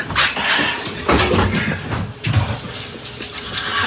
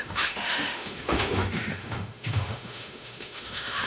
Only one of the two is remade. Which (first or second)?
second